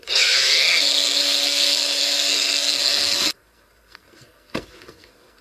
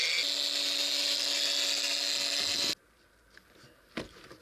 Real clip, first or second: second